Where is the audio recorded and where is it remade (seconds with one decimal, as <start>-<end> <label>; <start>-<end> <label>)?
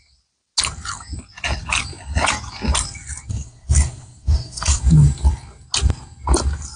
0.0-3.3 recorded; 3.3-4.8 remade; 4.8-6.8 recorded